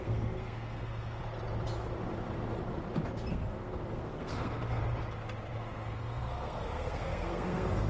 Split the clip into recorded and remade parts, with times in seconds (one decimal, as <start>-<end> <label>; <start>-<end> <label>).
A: 0.0-1.2 remade; 1.2-3.3 recorded; 3.3-4.8 remade; 4.8-5.6 recorded; 5.6-7.9 remade